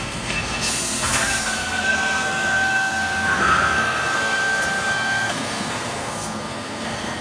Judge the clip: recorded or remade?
remade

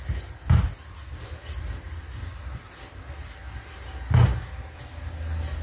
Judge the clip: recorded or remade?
recorded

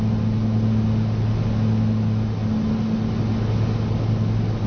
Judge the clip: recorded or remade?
recorded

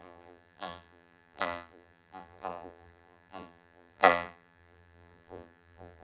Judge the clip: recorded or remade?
remade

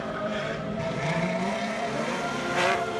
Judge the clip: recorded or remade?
remade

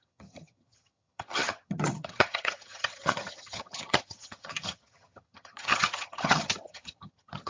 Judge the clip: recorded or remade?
remade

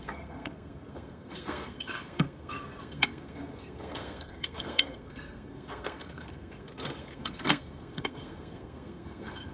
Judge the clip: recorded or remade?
remade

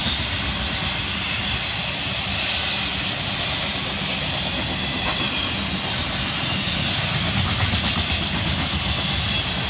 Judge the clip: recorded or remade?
recorded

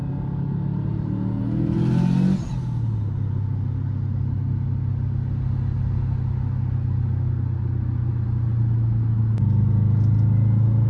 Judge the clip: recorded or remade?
recorded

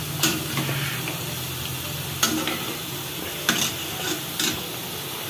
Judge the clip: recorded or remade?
recorded